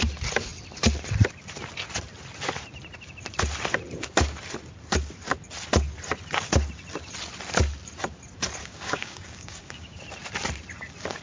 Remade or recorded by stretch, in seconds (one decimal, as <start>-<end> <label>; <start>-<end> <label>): 0.0-8.6 recorded; 8.6-10.0 remade; 10.0-11.2 recorded